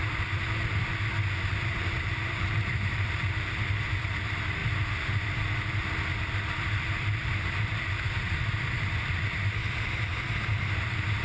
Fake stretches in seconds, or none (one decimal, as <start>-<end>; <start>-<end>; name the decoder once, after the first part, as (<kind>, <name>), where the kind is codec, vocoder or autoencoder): 0.0-4.6 (vocoder, BigVGAN v2); 5.3-11.2